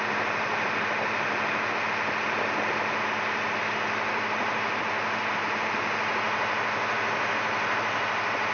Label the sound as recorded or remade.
recorded